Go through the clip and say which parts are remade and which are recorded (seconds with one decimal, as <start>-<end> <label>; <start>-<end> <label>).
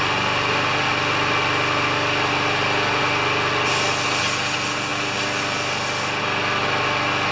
0.0-7.3 recorded